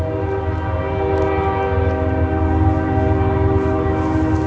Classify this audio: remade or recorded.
recorded